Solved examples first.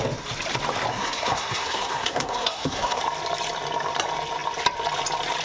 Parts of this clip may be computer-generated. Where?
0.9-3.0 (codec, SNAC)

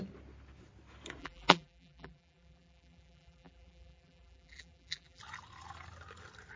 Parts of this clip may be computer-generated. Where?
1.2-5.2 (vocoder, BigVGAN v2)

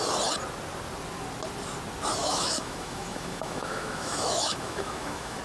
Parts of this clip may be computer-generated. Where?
2.2-5.4 (autoencoder, DAC-VAE)